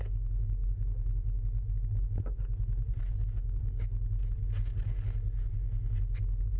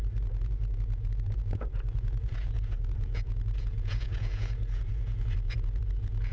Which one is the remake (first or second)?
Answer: second